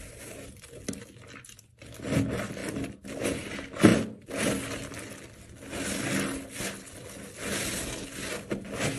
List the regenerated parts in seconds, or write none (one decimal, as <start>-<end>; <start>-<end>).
none